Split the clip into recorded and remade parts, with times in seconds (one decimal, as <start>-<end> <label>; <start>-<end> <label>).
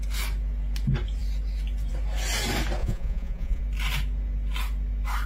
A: 0.0-2.8 recorded; 2.8-3.6 remade; 3.6-5.3 recorded